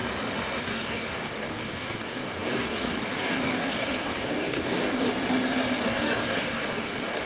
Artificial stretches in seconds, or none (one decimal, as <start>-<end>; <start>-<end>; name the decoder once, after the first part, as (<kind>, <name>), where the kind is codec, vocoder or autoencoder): 0.6-5.1 (codec, DAC); 5.8-7.3